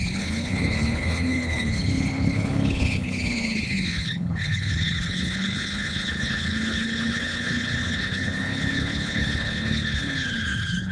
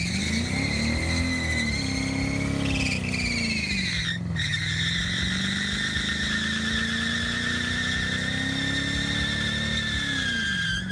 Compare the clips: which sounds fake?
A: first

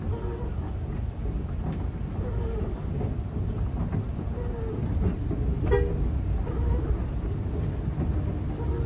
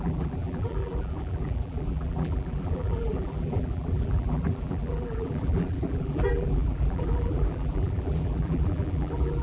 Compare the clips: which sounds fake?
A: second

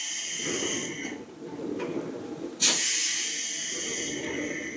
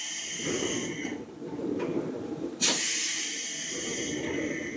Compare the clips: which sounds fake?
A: second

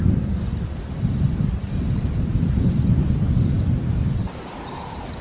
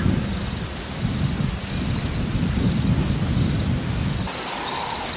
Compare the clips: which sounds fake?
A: first